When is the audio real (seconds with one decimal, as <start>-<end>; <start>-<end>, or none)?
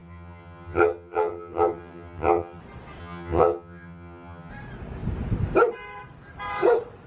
2.6-3.0; 4.5-7.1